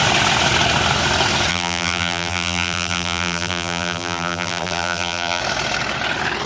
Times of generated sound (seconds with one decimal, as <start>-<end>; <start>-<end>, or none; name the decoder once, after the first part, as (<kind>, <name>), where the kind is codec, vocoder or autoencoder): 1.5-5.4 (vocoder, BigVGAN v2)